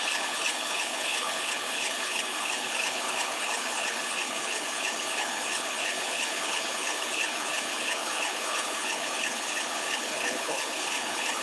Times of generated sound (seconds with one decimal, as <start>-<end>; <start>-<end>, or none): 0.0-11.4